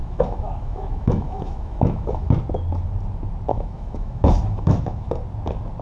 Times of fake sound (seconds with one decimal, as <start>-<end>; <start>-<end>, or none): 0.0-2.3; 3.5-5.1